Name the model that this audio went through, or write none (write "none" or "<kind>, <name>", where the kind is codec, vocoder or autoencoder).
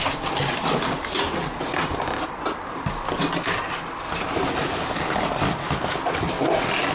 none